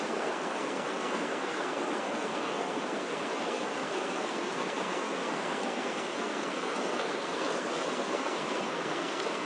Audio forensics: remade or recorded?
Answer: remade